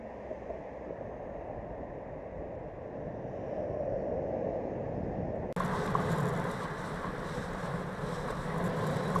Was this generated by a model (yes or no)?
no